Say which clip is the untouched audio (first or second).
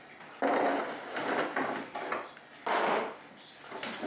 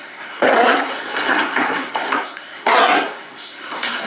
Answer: first